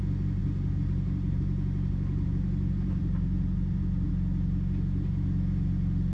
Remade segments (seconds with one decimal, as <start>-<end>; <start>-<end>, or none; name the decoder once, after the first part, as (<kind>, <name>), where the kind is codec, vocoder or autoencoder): 0.4-4.1 (vocoder, BigVGAN v2)